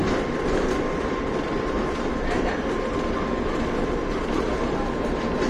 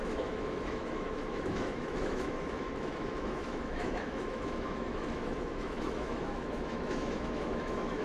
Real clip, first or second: first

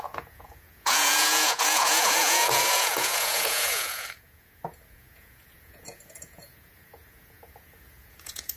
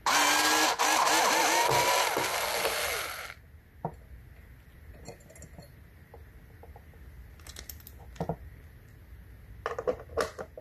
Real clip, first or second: second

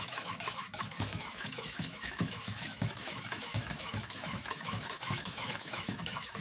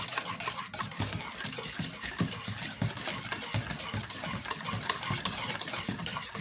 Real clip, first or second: second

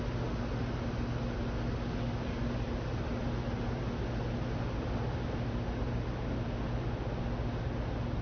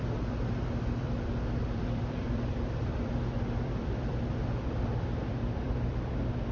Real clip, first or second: first